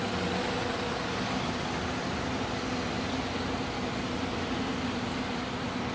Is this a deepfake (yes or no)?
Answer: no